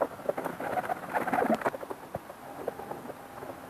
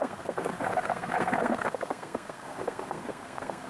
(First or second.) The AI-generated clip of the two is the second